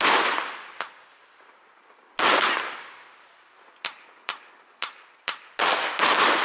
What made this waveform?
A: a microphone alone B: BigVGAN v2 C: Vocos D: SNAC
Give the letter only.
A